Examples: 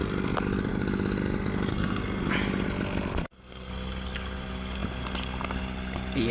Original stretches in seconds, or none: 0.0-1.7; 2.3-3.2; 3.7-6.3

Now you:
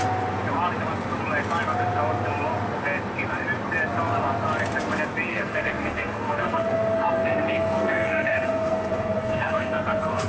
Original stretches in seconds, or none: 0.0-5.3

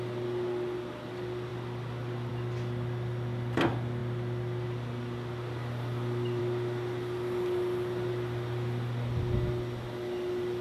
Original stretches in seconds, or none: 0.0-10.6